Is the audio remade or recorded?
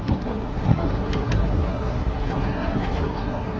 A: remade